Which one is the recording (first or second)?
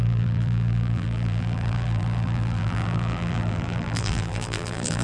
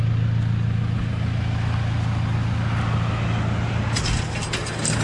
second